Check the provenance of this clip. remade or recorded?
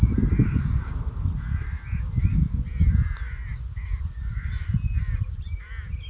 recorded